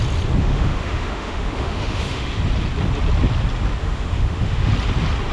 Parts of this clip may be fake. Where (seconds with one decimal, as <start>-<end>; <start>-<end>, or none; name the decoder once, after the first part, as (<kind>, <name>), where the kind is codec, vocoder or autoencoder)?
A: 0.4-2.4 (autoencoder, DAC-VAE); 3.8-4.7

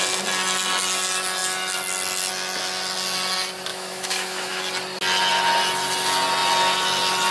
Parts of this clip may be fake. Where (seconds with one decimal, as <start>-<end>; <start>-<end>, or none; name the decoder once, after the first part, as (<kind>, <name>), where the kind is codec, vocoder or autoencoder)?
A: 3.7-4.6 (autoencoder, DAC-VAE)

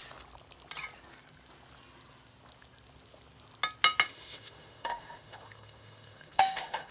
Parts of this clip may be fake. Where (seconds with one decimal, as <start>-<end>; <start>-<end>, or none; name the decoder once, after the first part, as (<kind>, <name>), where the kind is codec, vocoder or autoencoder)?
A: 4.1-6.9 (autoencoder, DAC-VAE)

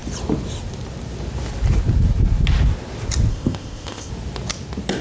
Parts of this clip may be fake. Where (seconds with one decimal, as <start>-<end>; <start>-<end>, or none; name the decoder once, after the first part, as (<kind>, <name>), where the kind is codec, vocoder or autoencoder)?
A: 3.3-4.1 (codec, ZipCodec)